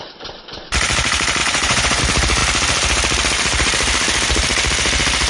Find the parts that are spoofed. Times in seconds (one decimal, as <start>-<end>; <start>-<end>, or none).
1.4-2.0